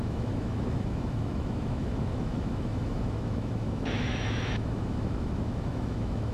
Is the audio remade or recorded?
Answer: remade